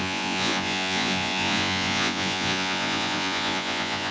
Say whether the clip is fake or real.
fake